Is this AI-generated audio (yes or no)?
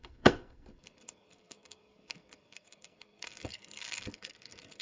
yes